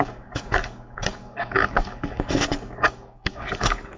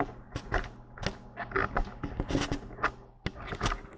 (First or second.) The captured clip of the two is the second